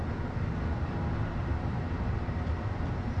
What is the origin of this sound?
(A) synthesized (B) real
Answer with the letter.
A